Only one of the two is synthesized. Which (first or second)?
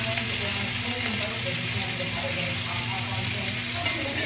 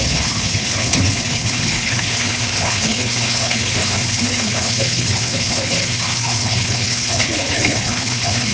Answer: second